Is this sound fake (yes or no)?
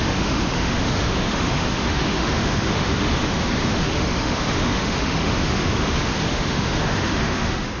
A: yes